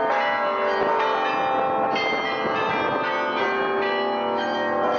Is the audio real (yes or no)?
yes